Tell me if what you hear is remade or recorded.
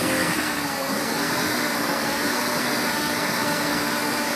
remade